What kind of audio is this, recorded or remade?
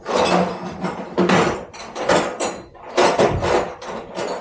recorded